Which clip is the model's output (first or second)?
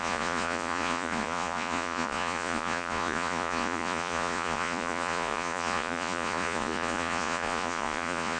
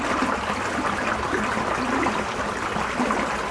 first